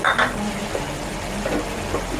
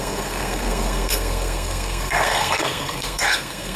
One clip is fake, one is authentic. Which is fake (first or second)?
second